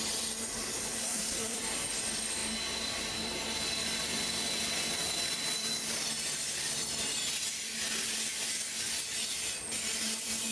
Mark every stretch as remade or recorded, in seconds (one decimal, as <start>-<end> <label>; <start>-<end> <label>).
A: 0.0-1.0 recorded; 1.0-1.6 remade; 1.6-10.5 recorded